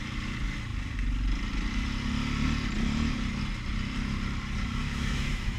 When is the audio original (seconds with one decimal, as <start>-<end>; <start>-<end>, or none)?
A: 0.0-4.8